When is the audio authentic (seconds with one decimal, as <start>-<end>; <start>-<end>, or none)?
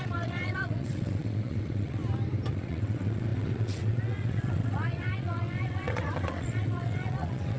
2.0-2.5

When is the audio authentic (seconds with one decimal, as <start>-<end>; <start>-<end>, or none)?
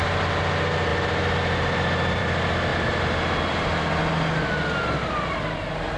0.0-6.0